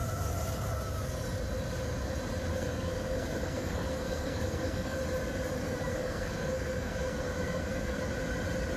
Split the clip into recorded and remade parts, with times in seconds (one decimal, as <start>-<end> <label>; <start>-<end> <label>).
0.0-2.5 recorded; 2.5-5.0 remade; 5.0-5.6 recorded; 5.6-8.0 remade; 8.0-8.8 recorded